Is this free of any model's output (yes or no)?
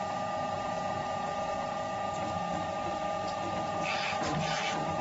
yes